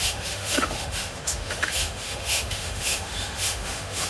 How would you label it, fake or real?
fake